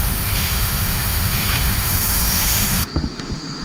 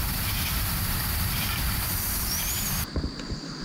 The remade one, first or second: first